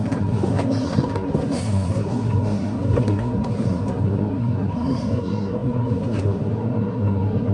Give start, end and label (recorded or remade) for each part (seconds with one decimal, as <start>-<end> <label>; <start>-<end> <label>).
0.0-7.5 remade